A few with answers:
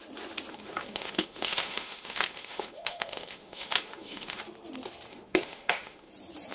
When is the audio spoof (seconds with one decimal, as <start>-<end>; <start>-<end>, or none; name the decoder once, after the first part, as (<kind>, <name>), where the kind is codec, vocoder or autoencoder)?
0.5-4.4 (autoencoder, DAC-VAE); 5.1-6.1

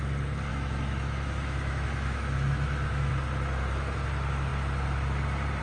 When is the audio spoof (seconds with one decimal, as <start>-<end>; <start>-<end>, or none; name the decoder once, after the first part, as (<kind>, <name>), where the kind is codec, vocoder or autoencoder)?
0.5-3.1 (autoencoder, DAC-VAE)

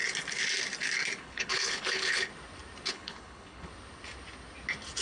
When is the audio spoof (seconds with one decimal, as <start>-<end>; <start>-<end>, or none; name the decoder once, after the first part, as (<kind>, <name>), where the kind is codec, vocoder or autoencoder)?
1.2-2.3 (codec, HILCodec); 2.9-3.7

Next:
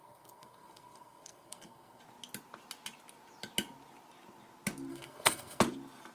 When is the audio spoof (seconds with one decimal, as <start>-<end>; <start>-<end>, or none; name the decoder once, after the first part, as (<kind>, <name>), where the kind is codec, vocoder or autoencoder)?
0.0-2.0 (codec, SNAC); 4.9-5.6

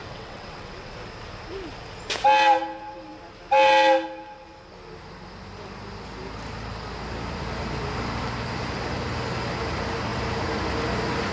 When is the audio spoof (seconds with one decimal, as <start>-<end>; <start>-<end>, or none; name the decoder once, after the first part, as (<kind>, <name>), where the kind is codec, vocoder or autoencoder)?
0.0-0.9 (vocoder, WaveNeXt)